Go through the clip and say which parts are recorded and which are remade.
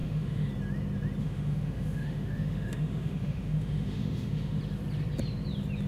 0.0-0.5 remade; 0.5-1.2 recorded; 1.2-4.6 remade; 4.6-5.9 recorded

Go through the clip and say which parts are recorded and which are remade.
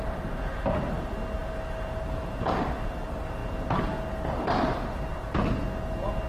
0.0-6.3 recorded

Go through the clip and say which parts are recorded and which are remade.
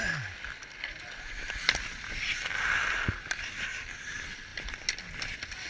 0.0-5.7 recorded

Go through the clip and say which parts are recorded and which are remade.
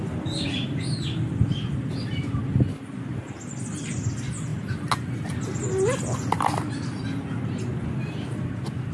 0.0-8.9 recorded